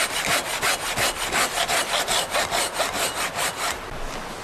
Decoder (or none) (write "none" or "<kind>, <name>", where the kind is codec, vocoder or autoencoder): none